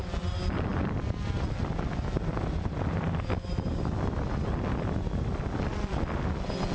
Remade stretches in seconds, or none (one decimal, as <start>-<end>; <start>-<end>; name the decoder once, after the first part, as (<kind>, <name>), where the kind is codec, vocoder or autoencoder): none